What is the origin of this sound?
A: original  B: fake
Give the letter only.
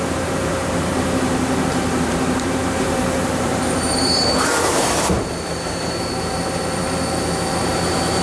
B